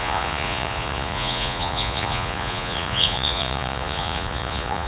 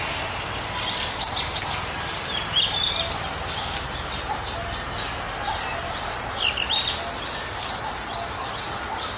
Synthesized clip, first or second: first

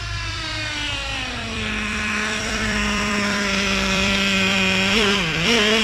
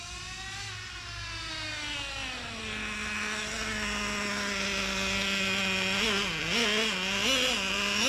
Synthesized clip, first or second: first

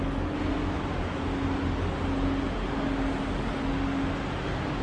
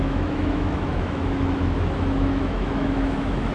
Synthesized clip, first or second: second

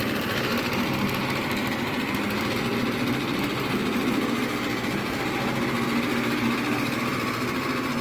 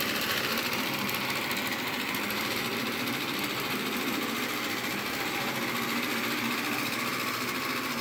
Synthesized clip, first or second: second